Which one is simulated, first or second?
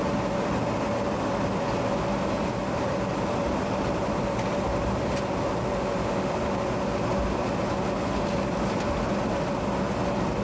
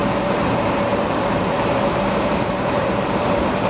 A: second